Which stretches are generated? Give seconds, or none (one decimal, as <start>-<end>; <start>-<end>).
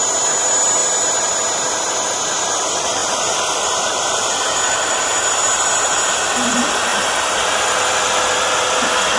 none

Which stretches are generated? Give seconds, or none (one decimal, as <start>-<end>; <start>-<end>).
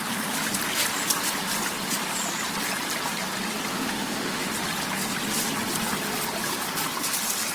3.7-4.5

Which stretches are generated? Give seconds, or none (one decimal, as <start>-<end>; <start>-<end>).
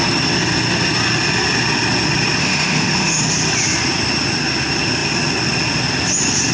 2.4-3.2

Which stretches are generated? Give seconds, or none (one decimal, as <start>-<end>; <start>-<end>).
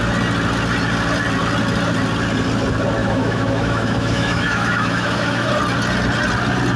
3.0-5.5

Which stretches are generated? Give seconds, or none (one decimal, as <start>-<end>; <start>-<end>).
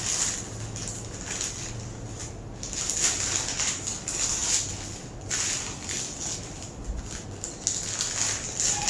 none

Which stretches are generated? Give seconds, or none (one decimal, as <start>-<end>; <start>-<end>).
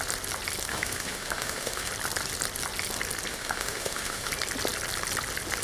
0.7-1.9; 3.3-4.3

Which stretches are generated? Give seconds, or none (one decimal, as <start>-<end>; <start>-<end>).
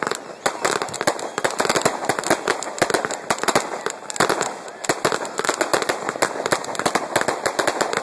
none